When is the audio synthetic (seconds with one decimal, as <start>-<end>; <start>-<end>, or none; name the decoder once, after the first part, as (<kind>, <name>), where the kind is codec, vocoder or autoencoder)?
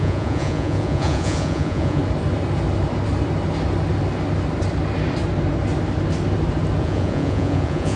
0.0-2.0 (vocoder, Vocos); 6.8-8.0